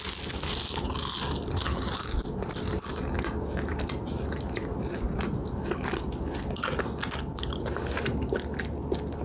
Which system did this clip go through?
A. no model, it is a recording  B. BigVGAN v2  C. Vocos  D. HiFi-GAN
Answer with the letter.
A